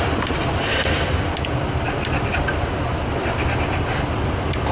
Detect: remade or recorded recorded